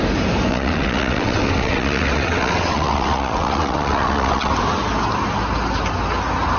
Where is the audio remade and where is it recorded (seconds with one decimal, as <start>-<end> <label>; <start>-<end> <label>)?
0.0-0.5 recorded; 0.5-4.5 remade; 4.5-6.6 recorded